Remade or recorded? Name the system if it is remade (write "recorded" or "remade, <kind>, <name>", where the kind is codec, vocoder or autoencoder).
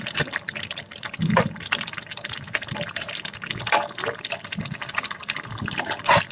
recorded